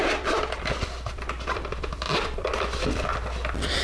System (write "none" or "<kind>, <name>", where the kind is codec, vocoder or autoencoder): vocoder, BigVGAN v2